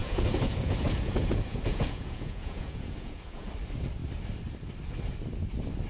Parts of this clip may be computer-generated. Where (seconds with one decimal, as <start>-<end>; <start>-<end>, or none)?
0.0-3.5